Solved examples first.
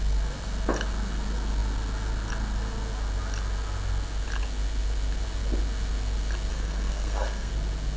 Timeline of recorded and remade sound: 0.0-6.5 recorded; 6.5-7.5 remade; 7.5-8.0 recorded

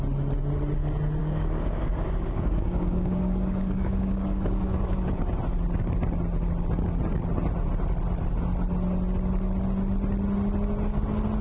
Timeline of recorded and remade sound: 0.0-1.2 recorded; 1.2-5.2 remade; 5.2-11.4 recorded

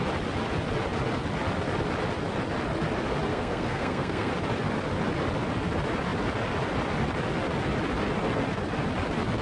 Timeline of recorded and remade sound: 0.0-3.3 recorded; 3.3-4.3 remade; 4.3-9.4 recorded

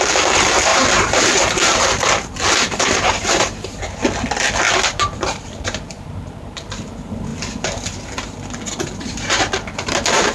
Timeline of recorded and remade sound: 0.0-4.0 remade; 4.0-4.9 recorded; 4.9-7.3 remade; 7.3-8.9 recorded; 8.9-10.3 remade

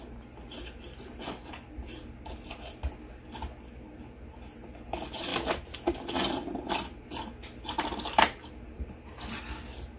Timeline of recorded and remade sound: 0.0-10.0 recorded

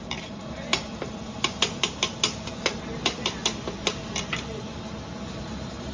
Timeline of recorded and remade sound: 0.0-5.9 recorded